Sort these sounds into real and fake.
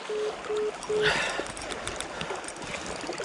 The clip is real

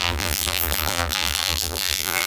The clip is fake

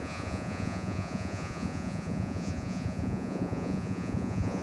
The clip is fake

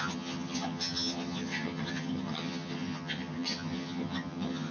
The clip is fake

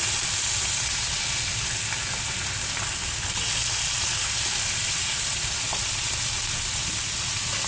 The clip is real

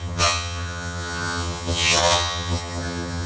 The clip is fake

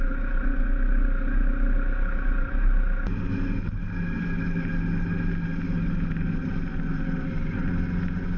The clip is real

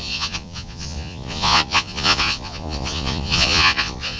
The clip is fake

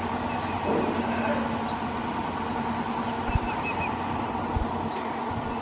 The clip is real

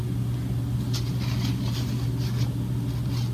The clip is real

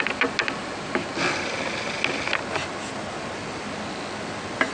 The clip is real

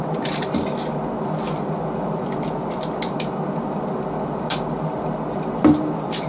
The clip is real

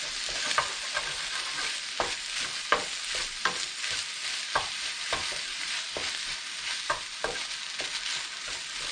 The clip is real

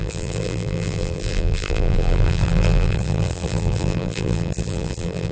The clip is fake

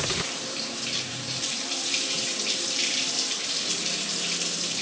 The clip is fake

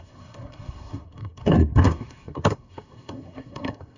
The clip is fake